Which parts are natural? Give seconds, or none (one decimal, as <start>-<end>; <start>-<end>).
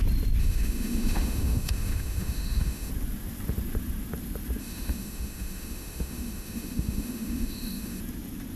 0.0-0.4; 2.9-4.6; 8.0-8.6